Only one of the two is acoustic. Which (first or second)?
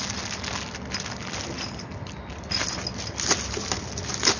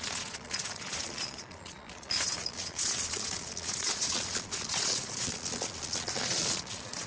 first